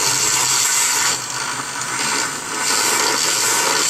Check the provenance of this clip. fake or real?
real